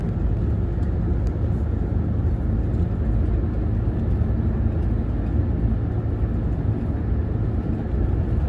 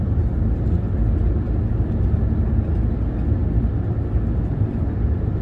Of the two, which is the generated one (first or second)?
second